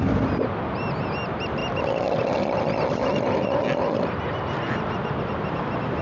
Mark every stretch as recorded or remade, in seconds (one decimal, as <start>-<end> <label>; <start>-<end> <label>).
0.0-6.0 recorded